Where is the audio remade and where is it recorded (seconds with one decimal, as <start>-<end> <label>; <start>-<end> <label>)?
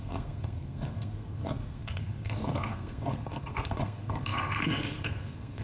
0.0-5.6 remade